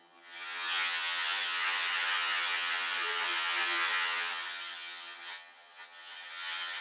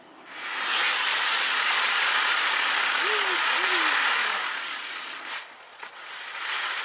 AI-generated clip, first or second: first